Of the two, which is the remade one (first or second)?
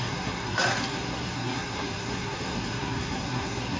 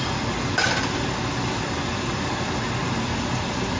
first